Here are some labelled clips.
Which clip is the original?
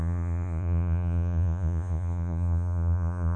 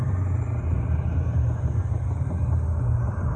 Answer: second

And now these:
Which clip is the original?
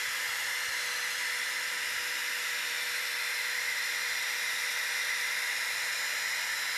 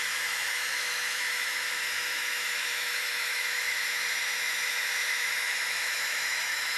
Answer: first